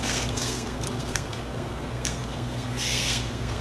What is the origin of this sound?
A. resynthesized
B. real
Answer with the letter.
A